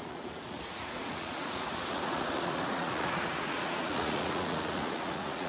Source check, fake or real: fake